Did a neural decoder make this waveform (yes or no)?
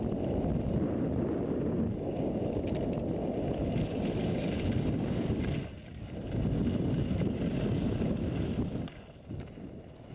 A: no